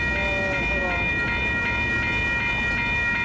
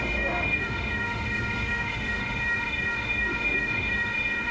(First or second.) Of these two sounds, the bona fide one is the first